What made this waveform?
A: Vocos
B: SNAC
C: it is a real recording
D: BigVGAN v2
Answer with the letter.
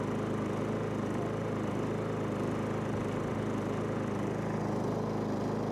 C